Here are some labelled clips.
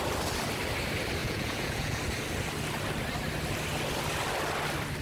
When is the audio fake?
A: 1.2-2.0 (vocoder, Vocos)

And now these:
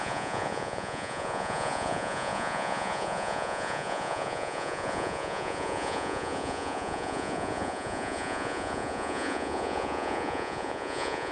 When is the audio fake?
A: 0.0-11.3 (vocoder, Vocos)

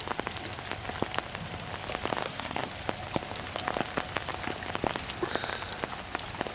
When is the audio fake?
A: 2.2-2.7 (codec, SNAC)

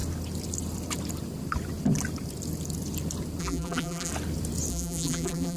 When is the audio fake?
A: 3.4-4.1 (vocoder, BigVGAN v2); 4.7-5.6

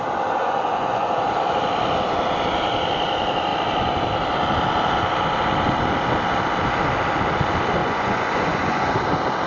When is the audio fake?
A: 0.4-1.2 (vocoder, Vocos); 7.8-8.9

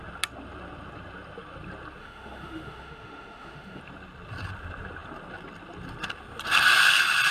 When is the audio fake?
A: 2.0-3.8 (autoencoder, DAC-VAE)